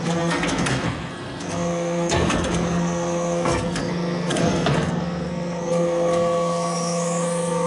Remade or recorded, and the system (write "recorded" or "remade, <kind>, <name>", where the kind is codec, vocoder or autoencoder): remade, codec, SNAC